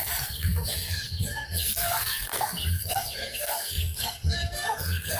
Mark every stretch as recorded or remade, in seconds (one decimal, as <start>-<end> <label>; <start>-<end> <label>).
0.0-5.2 remade